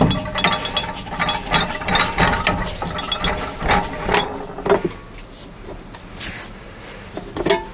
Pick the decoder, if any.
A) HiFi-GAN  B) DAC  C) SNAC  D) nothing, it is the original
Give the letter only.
D